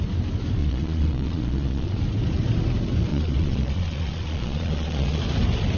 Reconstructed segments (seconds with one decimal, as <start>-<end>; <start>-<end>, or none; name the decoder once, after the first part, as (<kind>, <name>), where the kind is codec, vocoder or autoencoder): 0.6-2.0 (vocoder, Vocos); 3.1-5.2